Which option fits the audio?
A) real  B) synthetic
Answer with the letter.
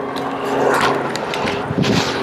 A